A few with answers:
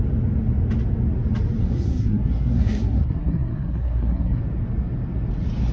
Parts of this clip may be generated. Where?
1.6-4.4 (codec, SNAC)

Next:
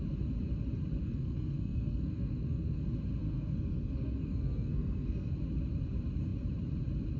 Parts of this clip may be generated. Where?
1.0-2.8 (codec, SNAC); 3.2-5.3

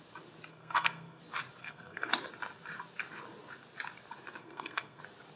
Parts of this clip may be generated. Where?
0.5-1.2 (codec, SNAC); 1.6-2.1; 4.4-5.0